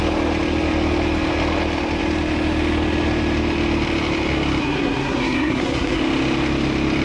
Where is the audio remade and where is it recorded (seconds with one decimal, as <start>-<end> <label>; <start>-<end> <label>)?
0.0-4.6 recorded; 4.6-6.0 remade; 6.0-7.0 recorded